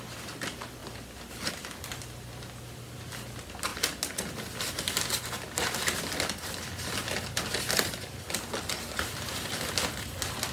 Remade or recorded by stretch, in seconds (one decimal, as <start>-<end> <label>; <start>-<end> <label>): 0.0-10.5 recorded